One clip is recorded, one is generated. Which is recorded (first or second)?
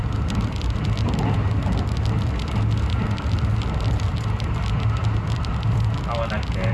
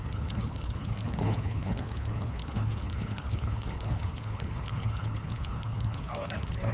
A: first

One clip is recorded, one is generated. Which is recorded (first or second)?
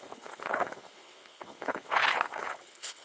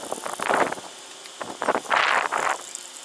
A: second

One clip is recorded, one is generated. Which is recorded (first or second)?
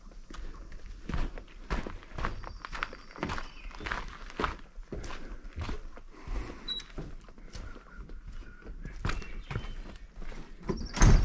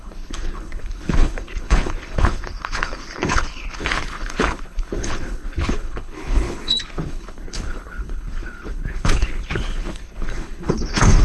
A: first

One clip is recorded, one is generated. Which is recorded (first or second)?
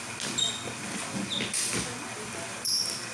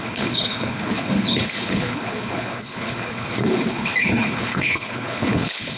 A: first